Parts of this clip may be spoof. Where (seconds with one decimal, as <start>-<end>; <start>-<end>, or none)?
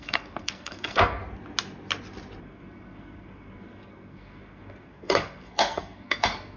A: 0.0-1.2; 2.4-6.6